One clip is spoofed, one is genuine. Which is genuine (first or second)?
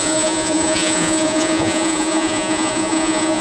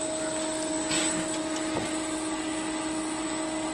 second